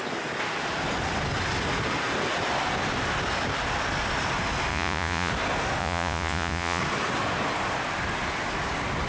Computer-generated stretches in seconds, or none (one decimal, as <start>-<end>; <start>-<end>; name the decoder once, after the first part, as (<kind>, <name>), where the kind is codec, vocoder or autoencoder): 4.7-5.3 (vocoder, Vocos); 5.8-6.8